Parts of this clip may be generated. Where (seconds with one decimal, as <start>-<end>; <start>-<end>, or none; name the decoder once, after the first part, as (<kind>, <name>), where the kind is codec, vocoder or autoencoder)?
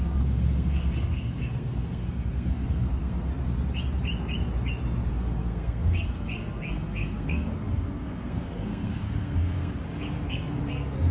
0.0-3.3 (codec, SNAC); 5.1-9.7; 10.3-11.1